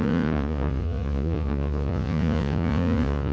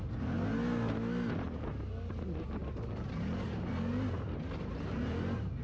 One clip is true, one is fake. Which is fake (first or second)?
first